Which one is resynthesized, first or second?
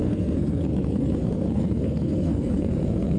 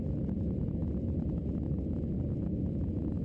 first